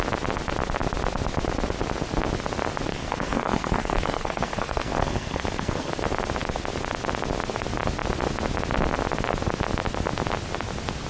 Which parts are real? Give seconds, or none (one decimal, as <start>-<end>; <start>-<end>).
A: 0.0-2.9; 5.9-11.1